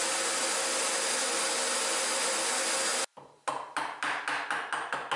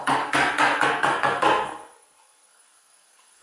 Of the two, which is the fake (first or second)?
second